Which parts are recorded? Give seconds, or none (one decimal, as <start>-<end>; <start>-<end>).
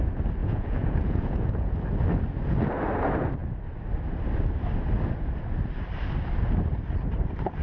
0.0-0.4; 1.7-7.6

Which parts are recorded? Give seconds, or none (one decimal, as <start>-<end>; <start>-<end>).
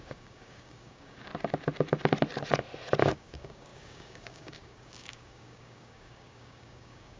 1.3-3.0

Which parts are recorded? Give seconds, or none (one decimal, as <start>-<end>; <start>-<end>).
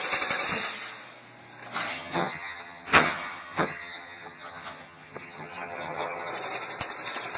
0.0-1.9; 6.3-7.4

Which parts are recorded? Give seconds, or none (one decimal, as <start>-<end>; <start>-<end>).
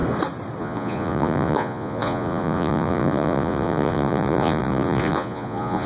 0.0-0.6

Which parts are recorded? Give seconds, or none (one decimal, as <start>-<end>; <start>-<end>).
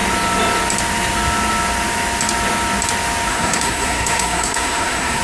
0.0-3.3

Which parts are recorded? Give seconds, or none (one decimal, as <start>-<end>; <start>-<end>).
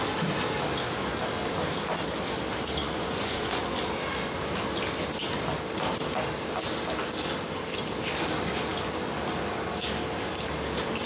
0.0-2.8; 3.6-11.1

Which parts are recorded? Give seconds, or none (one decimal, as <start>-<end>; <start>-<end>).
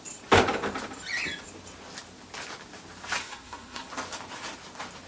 0.0-3.2; 3.9-5.1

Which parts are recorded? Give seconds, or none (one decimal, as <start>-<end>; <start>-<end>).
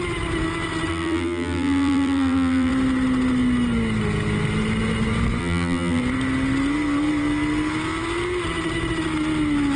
0.0-0.9; 2.7-5.4; 6.0-9.8